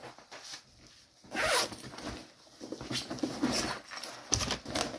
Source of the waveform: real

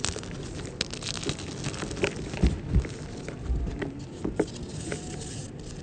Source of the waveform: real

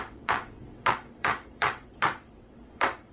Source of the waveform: fake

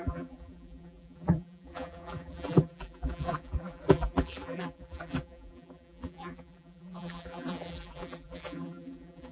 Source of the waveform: fake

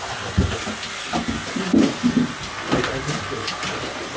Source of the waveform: real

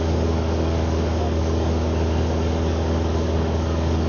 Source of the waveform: fake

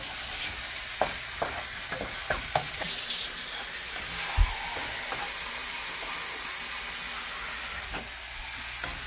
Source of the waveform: real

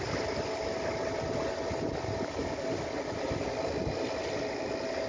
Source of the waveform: real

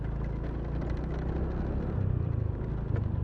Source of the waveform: real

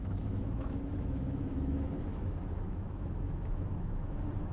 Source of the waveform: fake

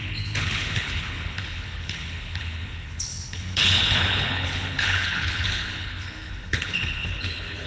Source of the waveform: fake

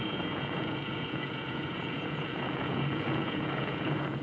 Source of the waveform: fake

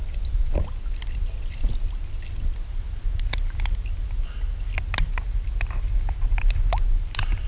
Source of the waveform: real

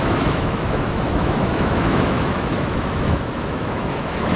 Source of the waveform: fake